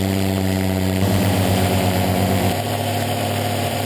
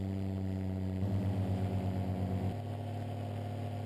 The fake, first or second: first